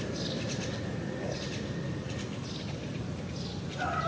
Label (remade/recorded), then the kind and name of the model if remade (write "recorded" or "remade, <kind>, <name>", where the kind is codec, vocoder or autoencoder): recorded